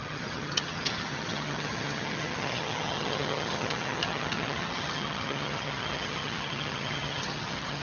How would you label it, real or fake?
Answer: fake